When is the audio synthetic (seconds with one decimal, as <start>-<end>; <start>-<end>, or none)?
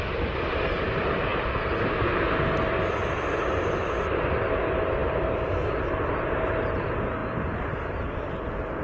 none